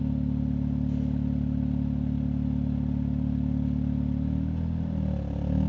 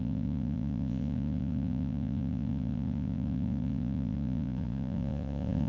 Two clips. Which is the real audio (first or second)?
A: first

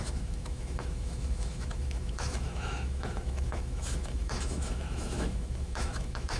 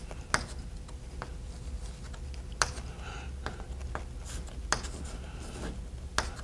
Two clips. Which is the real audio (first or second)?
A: second